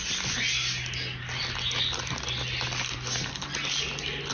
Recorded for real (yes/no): yes